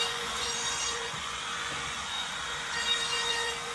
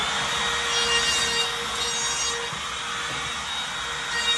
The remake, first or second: first